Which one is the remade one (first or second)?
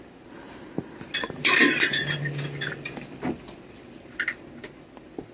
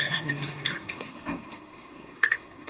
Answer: second